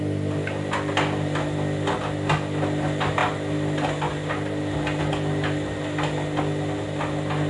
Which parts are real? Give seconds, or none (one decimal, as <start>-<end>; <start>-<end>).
0.0-7.5